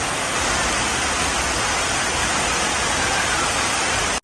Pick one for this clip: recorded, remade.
recorded